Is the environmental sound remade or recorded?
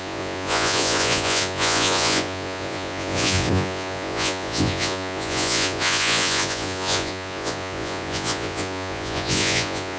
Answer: remade